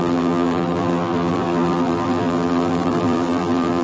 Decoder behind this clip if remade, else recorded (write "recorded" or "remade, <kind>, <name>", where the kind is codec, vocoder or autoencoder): remade, vocoder, BigVGAN v2